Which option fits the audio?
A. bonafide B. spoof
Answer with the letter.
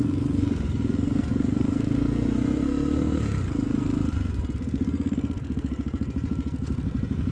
B